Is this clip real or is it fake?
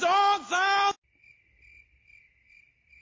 real